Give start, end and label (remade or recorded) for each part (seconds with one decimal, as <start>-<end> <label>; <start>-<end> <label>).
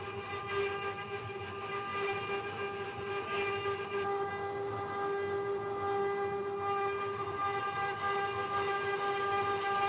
0.0-9.9 recorded